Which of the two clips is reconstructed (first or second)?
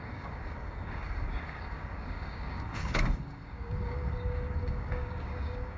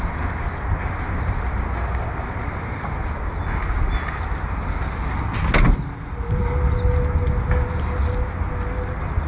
first